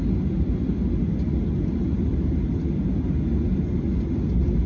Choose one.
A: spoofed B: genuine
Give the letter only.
B